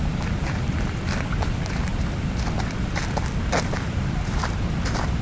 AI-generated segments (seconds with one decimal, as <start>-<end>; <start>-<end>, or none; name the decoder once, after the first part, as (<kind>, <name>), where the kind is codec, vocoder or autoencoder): 0.0-5.2 (vocoder, BigVGAN v2)